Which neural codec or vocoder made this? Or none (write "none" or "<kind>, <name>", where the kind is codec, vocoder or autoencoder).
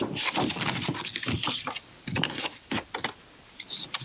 none